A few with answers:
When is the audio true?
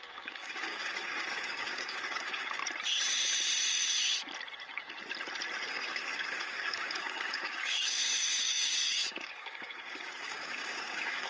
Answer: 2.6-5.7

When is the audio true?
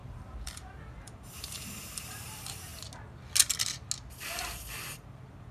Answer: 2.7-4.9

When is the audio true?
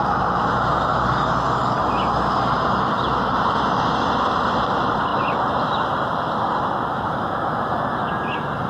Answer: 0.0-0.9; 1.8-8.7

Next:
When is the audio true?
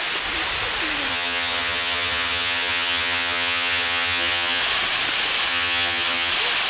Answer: 0.0-1.1; 4.6-5.5; 6.3-6.7